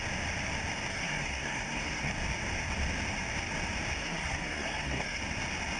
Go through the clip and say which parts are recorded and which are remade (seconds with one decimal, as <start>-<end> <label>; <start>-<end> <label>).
0.0-0.9 recorded; 0.9-2.1 remade; 2.1-4.0 recorded; 4.0-5.2 remade; 5.2-5.8 recorded